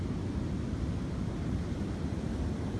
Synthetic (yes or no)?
no